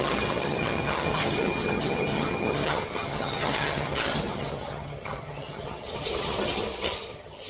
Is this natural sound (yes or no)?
no